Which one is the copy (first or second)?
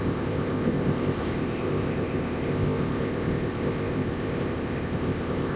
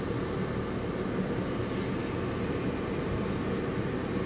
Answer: first